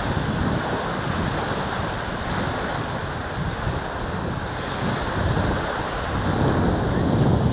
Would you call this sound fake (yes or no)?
no